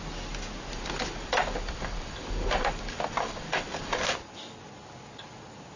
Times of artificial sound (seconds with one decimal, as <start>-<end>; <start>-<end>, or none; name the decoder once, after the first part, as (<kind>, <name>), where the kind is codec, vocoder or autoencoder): 0.7-4.2 (vocoder, BigVGAN v2)